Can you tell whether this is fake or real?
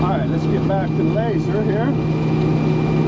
real